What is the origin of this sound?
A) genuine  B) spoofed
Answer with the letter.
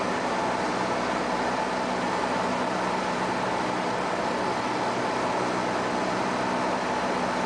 A